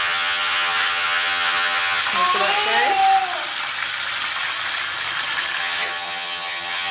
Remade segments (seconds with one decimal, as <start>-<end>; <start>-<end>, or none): 0.0-2.0; 5.6-6.9